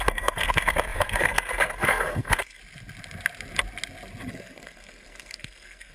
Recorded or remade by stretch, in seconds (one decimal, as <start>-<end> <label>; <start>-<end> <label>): 0.0-2.6 remade; 2.6-4.3 recorded; 4.3-5.9 remade